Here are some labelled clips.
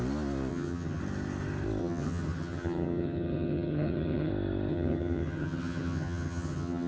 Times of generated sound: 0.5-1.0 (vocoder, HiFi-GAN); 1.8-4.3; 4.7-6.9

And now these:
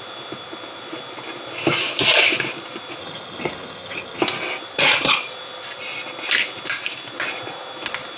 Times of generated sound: 3.0-4.2 (vocoder, HiFi-GAN)

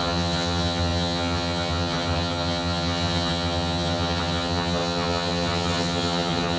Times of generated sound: 0.0-6.6 (vocoder, HiFi-GAN)

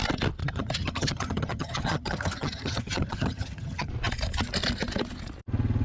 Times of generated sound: 0.4-3.9 (vocoder, HiFi-GAN)

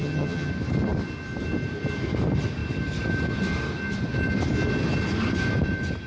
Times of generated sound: 0.0-0.5 (vocoder, HiFi-GAN)

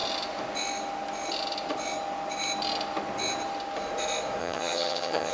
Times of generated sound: 4.4-5.3 (vocoder, HiFi-GAN)

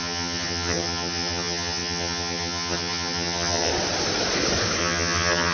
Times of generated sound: 0.0-3.7 (vocoder, HiFi-GAN); 4.8-5.5

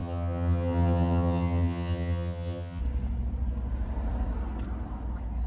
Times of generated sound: 0.0-2.8 (vocoder, HiFi-GAN)